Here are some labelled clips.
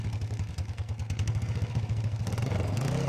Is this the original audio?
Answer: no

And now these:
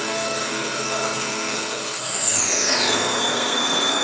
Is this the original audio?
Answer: no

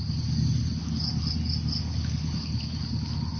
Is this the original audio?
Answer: yes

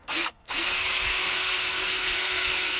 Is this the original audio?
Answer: no